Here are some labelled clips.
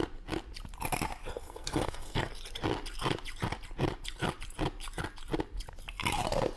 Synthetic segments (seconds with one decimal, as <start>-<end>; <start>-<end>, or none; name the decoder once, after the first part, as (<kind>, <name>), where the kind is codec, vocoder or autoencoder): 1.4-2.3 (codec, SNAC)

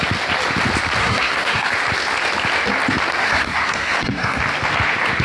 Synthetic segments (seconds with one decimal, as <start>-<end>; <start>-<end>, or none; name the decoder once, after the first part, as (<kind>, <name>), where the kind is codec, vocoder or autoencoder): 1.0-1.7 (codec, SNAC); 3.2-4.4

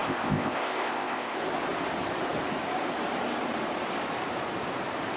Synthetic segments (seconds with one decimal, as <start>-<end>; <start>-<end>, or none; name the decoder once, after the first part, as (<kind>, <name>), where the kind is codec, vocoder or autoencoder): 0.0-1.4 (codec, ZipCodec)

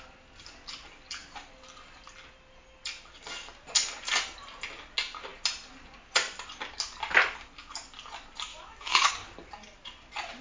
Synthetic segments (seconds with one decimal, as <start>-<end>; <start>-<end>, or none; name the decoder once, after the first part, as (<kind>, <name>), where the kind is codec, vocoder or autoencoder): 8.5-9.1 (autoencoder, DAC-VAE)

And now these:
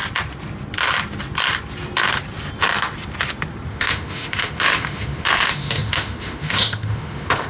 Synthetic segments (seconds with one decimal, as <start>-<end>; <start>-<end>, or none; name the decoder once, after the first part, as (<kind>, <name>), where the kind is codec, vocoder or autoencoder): 3.7-7.5 (autoencoder, DAC-VAE)